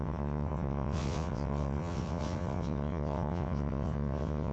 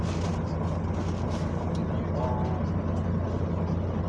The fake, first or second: first